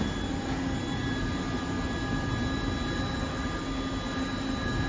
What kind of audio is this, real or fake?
real